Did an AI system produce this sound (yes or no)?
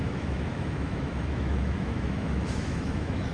yes